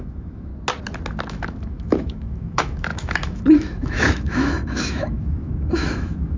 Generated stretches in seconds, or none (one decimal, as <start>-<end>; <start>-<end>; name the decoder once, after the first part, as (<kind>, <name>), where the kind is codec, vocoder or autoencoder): 0.0-0.5 (autoencoder, DAC-VAE); 1.3-6.4